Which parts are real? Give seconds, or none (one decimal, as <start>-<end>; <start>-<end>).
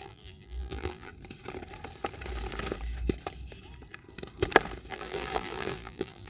1.1-4.9